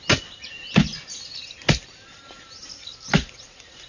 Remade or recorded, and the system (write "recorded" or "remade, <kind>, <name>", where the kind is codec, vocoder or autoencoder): recorded